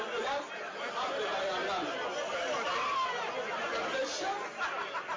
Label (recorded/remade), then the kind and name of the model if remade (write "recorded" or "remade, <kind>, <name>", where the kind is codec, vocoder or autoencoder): recorded